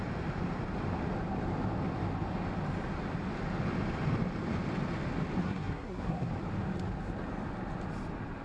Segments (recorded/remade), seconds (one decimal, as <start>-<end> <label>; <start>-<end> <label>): 0.0-5.4 recorded; 5.4-6.3 remade; 6.3-8.4 recorded